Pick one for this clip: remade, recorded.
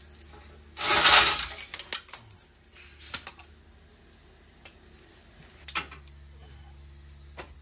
recorded